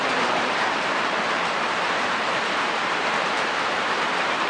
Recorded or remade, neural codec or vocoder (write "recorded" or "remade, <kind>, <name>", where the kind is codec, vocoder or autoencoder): remade, vocoder, BigVGAN v2